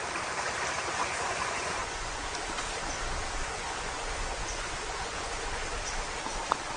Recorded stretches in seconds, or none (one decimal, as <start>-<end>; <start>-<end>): 0.0-1.0; 2.4-3.4; 5.9-6.8